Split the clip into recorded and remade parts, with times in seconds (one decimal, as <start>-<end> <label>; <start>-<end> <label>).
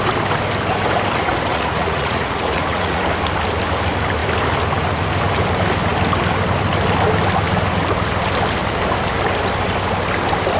0.0-1.5 recorded; 1.5-3.0 remade; 3.0-10.6 recorded